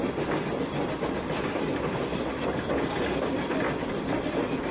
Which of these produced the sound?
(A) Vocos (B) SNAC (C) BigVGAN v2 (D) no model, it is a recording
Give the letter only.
D